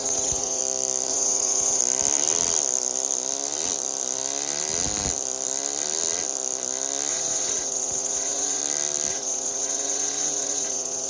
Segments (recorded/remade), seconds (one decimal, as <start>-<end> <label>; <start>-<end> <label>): 0.0-0.6 remade; 0.6-1.1 recorded; 1.1-1.8 remade; 1.8-7.1 recorded; 7.1-8.6 remade; 8.6-9.1 recorded; 9.1-11.1 remade